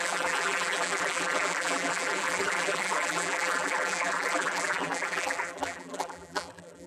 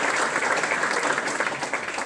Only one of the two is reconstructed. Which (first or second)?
first